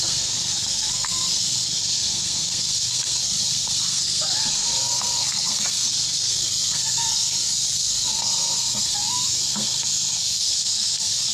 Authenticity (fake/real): fake